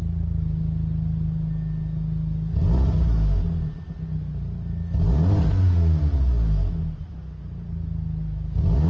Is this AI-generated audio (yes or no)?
no